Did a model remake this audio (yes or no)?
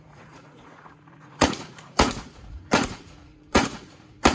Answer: yes